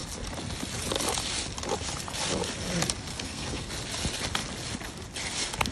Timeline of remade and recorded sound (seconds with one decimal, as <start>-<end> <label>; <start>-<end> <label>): 0.0-3.1 recorded; 3.1-3.7 remade; 3.7-5.7 recorded

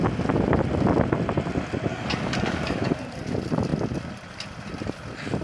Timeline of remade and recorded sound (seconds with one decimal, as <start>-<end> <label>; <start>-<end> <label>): 0.0-1.9 recorded; 1.9-3.0 remade; 3.0-5.4 recorded

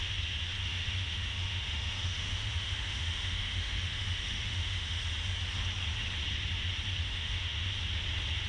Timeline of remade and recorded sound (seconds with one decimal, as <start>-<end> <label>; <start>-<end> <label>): 0.0-0.6 recorded; 0.6-5.0 remade; 5.0-7.0 recorded; 7.0-7.7 remade; 7.7-8.5 recorded